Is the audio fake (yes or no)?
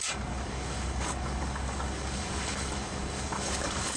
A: yes